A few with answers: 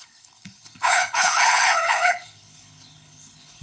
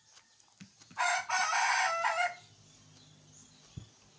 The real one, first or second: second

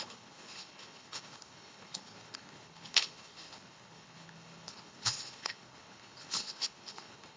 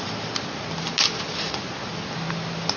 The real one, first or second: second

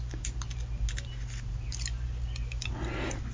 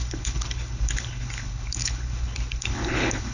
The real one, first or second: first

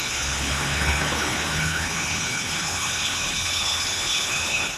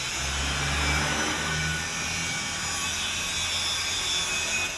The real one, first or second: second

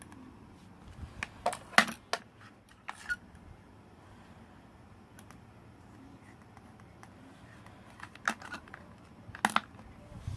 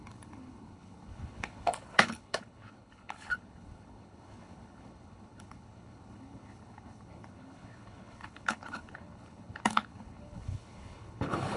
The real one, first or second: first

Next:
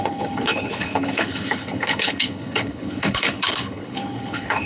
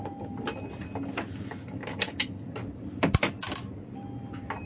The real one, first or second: second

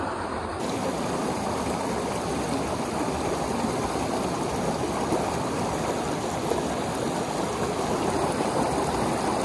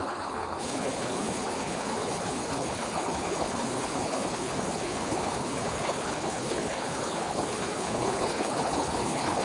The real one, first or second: first